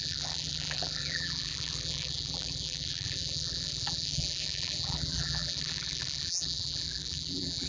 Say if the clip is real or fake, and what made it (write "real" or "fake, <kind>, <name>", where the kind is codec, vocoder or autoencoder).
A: fake, vocoder, BigVGAN v2